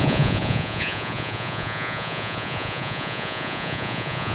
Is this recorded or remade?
remade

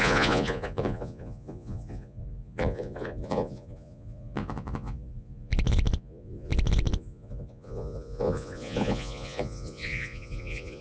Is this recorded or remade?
remade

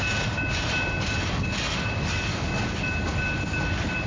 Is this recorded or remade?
recorded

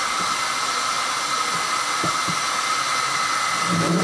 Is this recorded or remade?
recorded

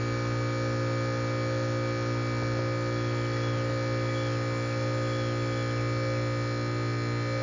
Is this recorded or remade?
recorded